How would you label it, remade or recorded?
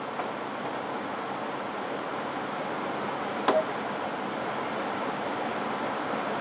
recorded